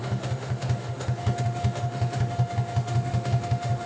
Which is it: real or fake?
fake